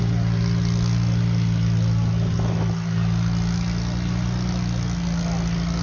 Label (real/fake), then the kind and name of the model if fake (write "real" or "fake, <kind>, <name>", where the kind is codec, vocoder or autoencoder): real